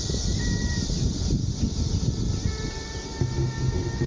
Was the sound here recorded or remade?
recorded